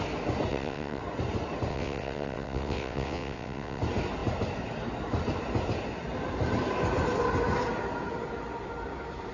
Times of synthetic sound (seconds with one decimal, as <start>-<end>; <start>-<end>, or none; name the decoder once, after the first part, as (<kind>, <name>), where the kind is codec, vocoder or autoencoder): 0.5-1.0 (vocoder, WaveNeXt); 1.7-3.8